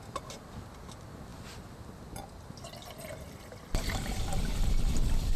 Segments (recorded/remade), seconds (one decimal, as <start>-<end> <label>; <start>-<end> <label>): 0.0-5.4 recorded